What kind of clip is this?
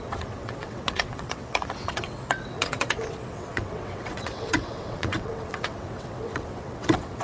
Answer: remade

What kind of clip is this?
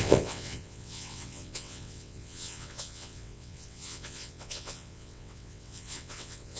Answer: remade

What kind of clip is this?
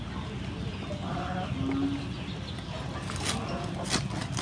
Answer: recorded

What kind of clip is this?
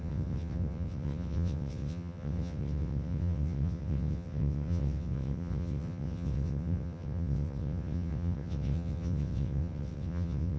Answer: remade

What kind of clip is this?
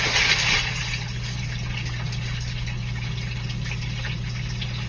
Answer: recorded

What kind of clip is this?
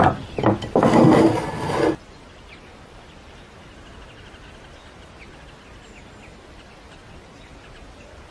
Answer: recorded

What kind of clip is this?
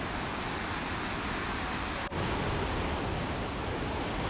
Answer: recorded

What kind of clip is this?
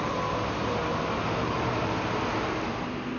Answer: recorded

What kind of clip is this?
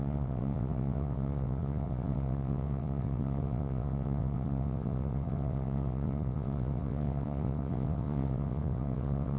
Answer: remade